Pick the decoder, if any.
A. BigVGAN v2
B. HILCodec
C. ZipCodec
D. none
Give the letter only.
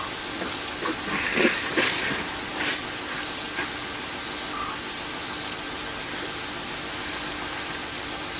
D